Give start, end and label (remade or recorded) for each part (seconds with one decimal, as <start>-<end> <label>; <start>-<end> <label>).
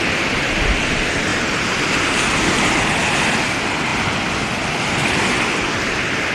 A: 0.0-1.3 recorded; 1.3-2.7 remade; 2.7-6.3 recorded